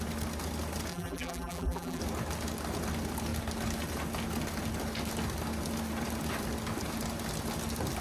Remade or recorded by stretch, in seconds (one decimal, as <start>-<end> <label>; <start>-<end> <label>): 0.0-0.9 recorded; 0.9-2.0 remade; 2.0-8.0 recorded